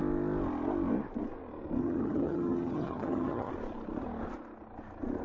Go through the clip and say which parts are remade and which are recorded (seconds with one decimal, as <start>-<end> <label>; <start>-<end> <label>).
0.0-1.8 recorded; 1.8-3.5 remade; 3.5-5.2 recorded